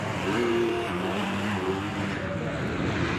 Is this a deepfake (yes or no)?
yes